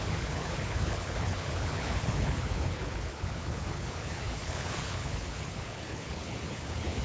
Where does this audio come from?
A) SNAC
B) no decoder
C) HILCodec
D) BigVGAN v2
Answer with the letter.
C